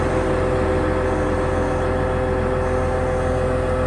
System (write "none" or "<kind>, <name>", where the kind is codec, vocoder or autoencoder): none